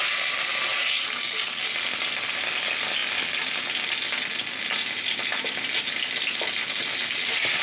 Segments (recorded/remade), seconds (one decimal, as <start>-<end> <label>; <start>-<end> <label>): 0.0-0.7 recorded; 0.7-1.6 remade; 1.6-7.6 recorded